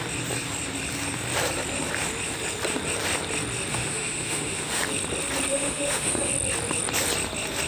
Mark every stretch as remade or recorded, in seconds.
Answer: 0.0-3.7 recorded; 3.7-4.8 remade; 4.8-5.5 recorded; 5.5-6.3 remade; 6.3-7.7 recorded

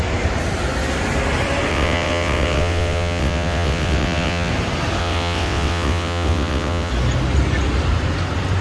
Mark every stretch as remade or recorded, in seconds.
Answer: 0.0-1.7 recorded; 1.7-4.5 remade; 4.5-5.0 recorded; 5.0-6.9 remade; 6.9-8.6 recorded

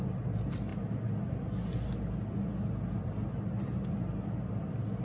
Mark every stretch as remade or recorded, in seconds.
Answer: 0.0-5.0 recorded

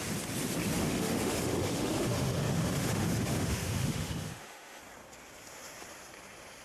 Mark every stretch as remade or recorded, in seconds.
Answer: 0.0-0.8 recorded; 0.8-4.8 remade; 4.8-6.6 recorded

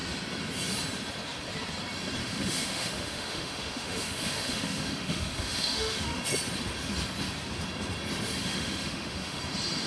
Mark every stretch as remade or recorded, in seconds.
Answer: 0.0-2.2 recorded; 2.2-6.2 remade; 6.2-8.4 recorded; 8.4-9.4 remade; 9.4-9.9 recorded

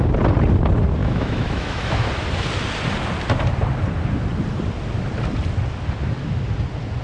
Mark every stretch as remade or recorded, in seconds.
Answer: 0.0-1.0 recorded; 1.0-2.1 remade; 2.1-7.0 recorded

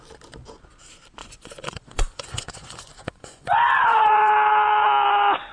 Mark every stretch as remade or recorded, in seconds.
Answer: 0.0-1.2 recorded; 1.2-4.3 remade; 4.3-5.5 recorded

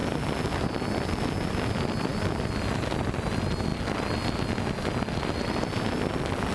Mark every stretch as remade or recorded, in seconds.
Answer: 0.0-6.5 recorded